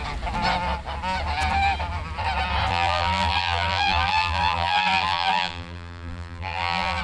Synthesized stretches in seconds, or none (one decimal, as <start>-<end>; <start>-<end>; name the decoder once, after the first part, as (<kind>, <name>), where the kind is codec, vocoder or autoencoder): 2.7-7.0 (vocoder, BigVGAN v2)